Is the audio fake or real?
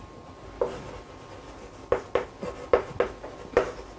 real